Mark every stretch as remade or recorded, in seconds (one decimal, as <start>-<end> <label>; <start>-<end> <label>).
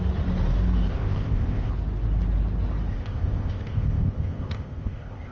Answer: 0.0-0.9 recorded; 0.9-1.7 remade; 1.7-2.9 recorded; 2.9-5.3 remade